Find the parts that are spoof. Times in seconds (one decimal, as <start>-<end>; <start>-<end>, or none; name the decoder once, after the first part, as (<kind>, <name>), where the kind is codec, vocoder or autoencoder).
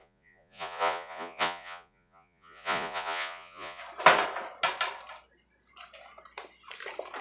0.0-3.8 (vocoder, Vocos)